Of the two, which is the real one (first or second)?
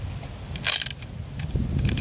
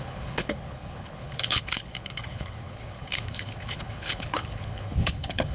first